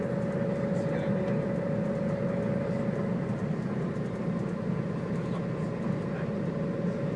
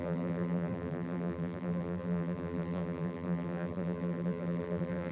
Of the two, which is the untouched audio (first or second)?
first